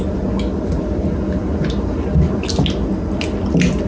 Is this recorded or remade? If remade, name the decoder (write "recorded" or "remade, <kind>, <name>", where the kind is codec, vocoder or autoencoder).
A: recorded